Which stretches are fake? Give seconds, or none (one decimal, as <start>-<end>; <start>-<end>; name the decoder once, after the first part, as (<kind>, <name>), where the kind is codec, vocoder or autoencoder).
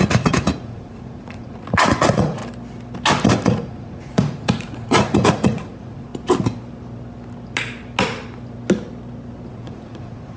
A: 0.0-2.4 (vocoder, Vocos); 3.3-6.1; 9.5-10.4